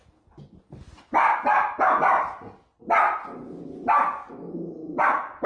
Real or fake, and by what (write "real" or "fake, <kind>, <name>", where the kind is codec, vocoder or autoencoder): real